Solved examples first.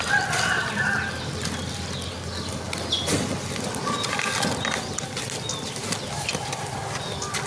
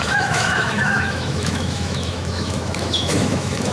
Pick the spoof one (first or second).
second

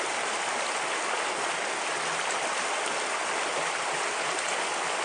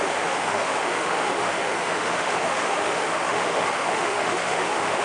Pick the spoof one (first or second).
second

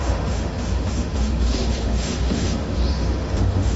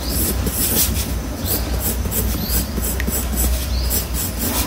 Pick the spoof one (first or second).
first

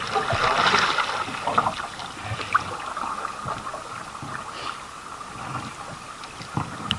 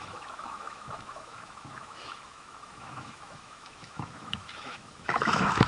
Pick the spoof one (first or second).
second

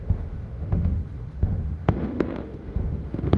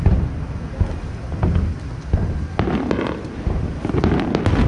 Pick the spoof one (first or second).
first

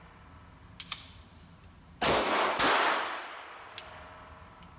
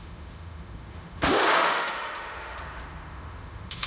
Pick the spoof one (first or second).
second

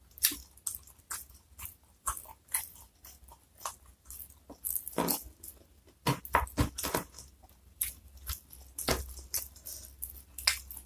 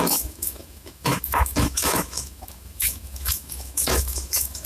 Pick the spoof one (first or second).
second